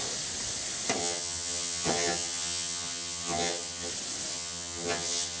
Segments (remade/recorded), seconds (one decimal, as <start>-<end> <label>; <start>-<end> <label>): 0.0-1.0 recorded; 1.0-3.9 remade; 3.9-4.3 recorded; 4.3-5.4 remade